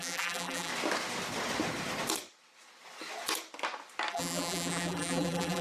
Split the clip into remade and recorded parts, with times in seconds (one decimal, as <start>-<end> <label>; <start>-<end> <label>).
0.0-0.7 remade; 0.7-4.1 recorded; 4.1-5.6 remade

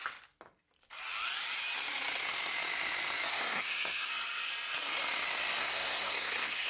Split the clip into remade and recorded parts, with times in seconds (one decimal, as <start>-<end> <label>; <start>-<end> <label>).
0.0-3.3 recorded; 3.3-4.1 remade; 4.1-5.6 recorded; 5.6-6.7 remade

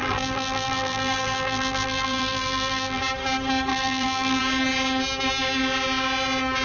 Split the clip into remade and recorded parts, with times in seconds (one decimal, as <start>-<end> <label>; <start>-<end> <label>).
0.0-3.0 remade; 3.0-3.7 recorded; 3.7-4.4 remade; 4.4-6.6 recorded

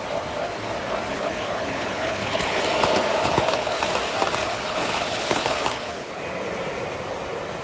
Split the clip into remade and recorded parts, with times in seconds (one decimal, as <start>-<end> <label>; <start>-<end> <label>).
0.0-1.1 recorded; 1.1-2.6 remade; 2.6-3.2 recorded; 3.2-3.8 remade; 3.8-4.4 recorded; 4.4-6.2 remade; 6.2-7.6 recorded

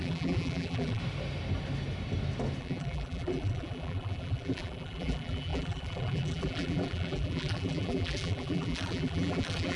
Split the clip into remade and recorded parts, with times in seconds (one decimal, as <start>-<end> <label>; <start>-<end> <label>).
0.0-1.0 remade; 1.0-2.6 recorded; 2.6-9.8 remade

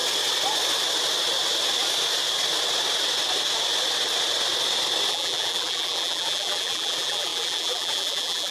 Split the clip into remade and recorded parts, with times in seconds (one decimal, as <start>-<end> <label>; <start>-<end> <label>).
0.0-5.1 recorded; 5.1-8.5 remade

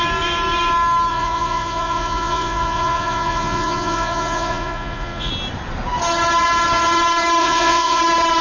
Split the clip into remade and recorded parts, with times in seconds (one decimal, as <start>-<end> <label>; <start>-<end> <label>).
0.0-1.1 recorded; 1.1-5.3 remade; 5.3-7.4 recorded; 7.4-8.0 remade; 8.0-8.4 recorded